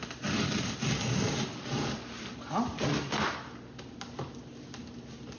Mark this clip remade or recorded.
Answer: recorded